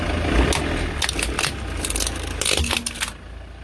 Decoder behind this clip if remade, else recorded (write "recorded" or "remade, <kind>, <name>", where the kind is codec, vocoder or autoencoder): recorded